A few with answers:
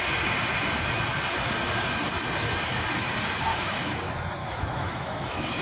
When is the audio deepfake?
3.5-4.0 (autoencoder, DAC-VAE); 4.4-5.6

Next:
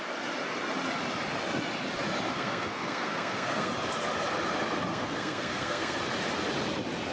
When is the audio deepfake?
2.3-3.7 (codec, SNAC); 4.9-6.0

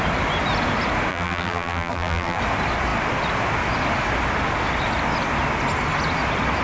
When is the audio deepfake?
1.1-2.4 (vocoder, BigVGAN v2)

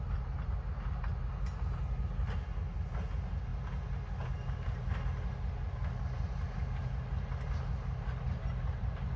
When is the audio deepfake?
none

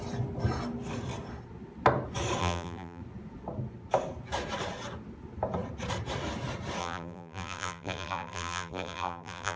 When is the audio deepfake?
2.4-3.0 (vocoder, BigVGAN v2); 6.8-9.6

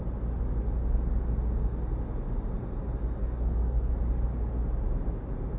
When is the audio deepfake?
3.2-3.9 (codec, SNAC)